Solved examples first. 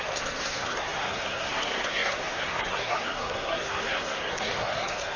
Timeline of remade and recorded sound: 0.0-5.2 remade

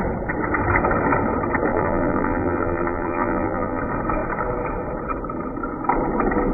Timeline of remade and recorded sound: 0.0-1.7 recorded; 1.7-3.8 remade; 3.8-6.5 recorded

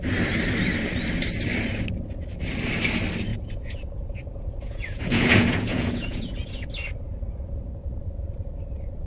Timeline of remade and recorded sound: 0.0-3.3 recorded; 3.3-6.7 remade; 6.7-9.1 recorded

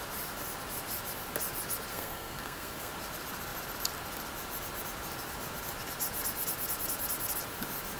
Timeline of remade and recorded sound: 0.0-1.9 recorded; 1.9-2.9 remade; 2.9-8.0 recorded